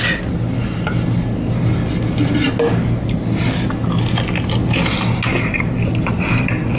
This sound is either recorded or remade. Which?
recorded